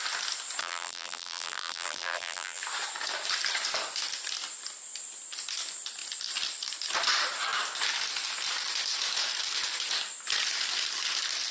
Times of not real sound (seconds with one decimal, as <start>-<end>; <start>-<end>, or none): 0.6-2.6